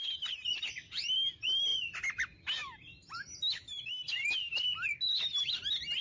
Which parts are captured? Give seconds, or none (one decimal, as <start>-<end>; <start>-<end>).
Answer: 0.0-6.0